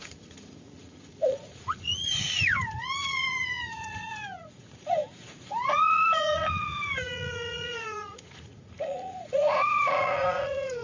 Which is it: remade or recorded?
remade